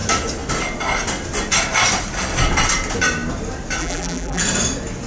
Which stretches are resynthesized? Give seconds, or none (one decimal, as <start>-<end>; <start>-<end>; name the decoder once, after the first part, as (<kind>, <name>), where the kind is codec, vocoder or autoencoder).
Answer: 3.8-4.4 (vocoder, BigVGAN v2)